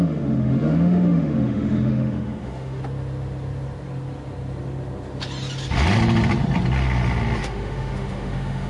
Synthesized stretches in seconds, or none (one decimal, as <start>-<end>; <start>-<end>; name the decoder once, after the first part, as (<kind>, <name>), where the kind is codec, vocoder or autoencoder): 0.0-2.8 (autoencoder, DAC-VAE); 7.4-8.7